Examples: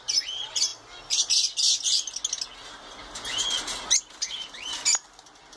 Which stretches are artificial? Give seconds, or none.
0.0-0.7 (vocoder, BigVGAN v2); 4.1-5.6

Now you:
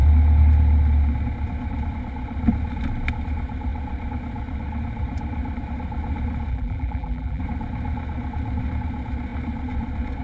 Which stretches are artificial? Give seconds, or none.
6.5-7.4 (vocoder, BigVGAN v2)